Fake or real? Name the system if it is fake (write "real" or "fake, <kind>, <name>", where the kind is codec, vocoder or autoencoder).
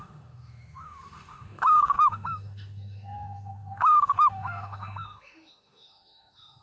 fake, autoencoder, DAC-VAE